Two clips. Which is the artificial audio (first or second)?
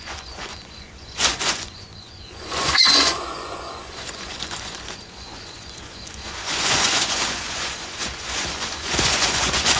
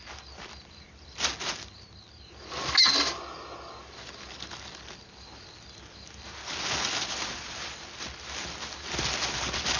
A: first